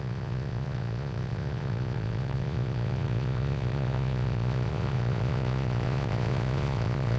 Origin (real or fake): fake